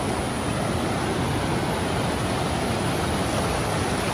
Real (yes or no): yes